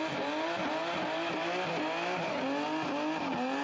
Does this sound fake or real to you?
real